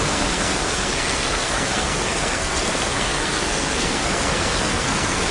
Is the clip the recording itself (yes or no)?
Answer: no